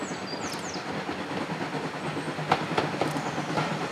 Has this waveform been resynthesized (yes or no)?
no